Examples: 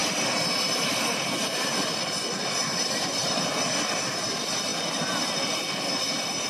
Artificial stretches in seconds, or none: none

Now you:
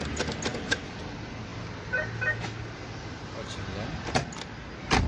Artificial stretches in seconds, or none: none

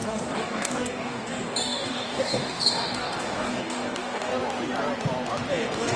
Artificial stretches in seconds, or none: 0.0-4.3 (codec, DAC); 5.5-6.0